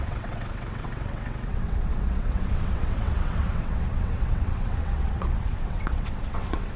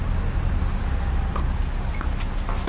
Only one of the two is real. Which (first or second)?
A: second